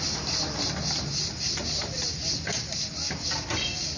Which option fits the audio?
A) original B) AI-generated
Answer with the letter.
A